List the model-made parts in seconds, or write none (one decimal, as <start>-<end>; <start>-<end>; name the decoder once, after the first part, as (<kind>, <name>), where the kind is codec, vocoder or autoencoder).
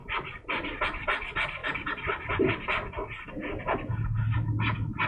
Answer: 0.0-0.8 (vocoder, BigVGAN v2); 1.6-2.4